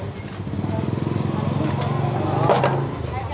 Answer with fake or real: real